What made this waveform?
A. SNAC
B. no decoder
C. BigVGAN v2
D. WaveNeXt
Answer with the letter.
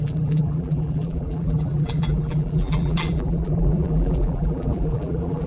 C